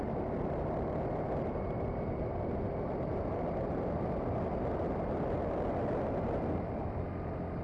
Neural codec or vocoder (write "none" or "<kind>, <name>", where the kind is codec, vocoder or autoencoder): none